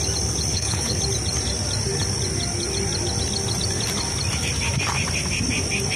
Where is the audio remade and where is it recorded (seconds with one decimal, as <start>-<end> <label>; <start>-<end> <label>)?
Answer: 0.0-0.5 recorded; 0.5-1.0 remade; 1.0-6.0 recorded